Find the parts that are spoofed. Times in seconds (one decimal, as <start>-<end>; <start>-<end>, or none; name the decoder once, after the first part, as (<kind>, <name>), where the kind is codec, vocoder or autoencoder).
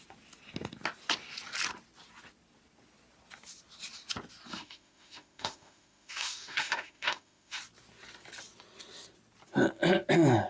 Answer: 4.5-7.6 (autoencoder, DAC-VAE)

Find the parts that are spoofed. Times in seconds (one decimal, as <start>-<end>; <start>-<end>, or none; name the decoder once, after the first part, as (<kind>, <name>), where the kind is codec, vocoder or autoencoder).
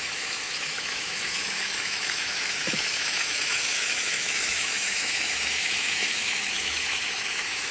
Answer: 0.0-7.7 (autoencoder, DAC-VAE)